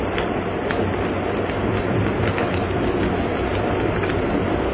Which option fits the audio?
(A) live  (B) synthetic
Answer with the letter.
A